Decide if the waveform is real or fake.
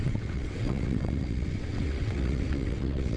fake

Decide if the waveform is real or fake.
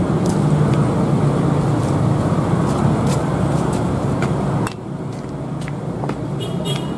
real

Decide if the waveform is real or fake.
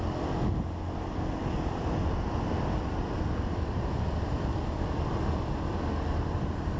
real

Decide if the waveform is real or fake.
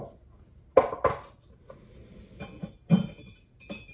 real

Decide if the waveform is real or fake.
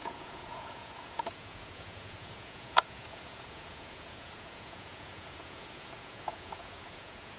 fake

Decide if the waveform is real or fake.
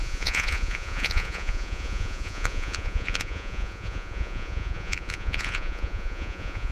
fake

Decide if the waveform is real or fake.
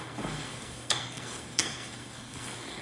fake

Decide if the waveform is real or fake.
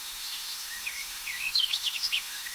fake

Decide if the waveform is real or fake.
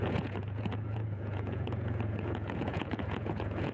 fake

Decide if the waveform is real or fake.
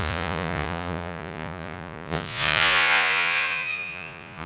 fake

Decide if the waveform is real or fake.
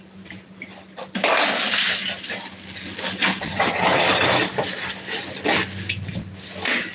real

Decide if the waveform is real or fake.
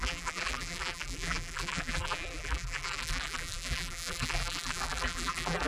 fake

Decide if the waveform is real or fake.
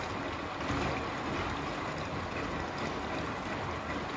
real